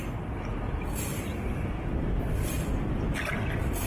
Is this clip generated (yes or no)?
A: no